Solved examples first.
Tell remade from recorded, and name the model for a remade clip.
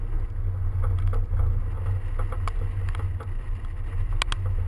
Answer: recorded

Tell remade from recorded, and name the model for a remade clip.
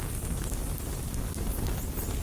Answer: recorded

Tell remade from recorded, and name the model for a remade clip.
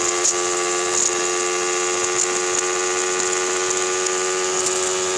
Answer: recorded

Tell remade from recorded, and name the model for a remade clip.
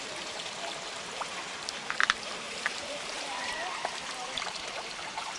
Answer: remade, vocoder, BigVGAN v2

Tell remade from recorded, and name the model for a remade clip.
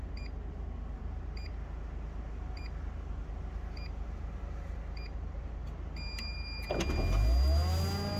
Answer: recorded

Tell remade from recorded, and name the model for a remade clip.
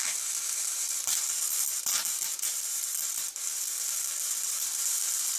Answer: recorded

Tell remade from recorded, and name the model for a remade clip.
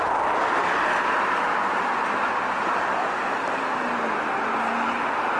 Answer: recorded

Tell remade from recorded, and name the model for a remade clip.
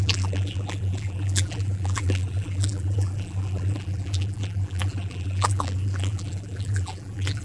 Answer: remade, vocoder, BigVGAN v2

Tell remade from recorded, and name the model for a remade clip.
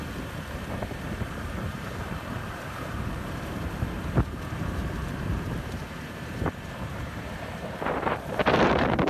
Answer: remade, vocoder, BigVGAN v2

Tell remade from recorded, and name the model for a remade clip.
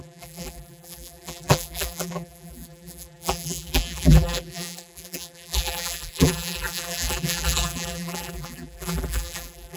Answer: remade, vocoder, BigVGAN v2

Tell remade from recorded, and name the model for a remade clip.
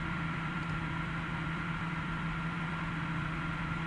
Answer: remade, vocoder, BigVGAN v2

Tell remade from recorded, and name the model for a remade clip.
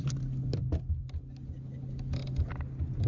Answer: recorded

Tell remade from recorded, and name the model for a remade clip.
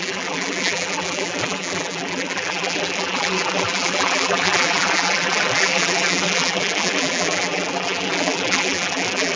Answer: remade, vocoder, BigVGAN v2